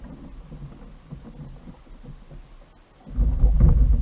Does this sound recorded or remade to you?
recorded